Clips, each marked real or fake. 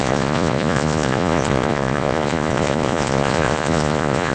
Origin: fake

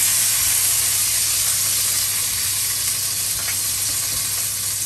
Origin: real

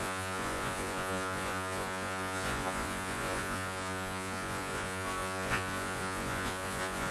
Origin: fake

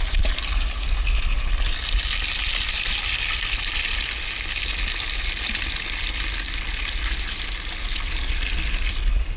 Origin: real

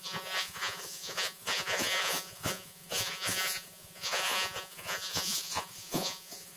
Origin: fake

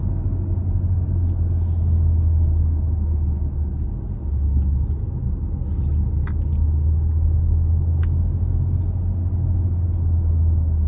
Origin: real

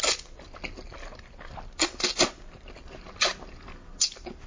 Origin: real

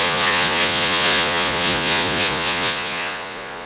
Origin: fake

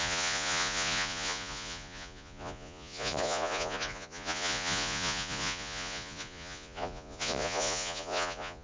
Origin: fake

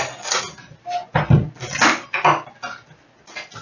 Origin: real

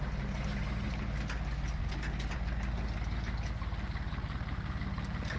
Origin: real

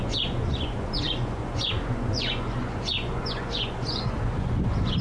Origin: fake